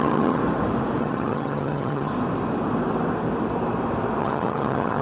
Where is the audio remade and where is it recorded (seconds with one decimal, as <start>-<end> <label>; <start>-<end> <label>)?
0.0-0.4 remade; 0.4-1.0 recorded; 1.0-2.1 remade; 2.1-4.2 recorded; 4.2-5.0 remade